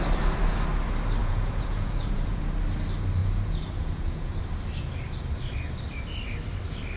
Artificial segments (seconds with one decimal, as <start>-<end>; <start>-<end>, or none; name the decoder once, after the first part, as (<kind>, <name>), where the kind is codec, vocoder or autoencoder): 1.2-2.4 (vocoder, Vocos); 3.2-4.4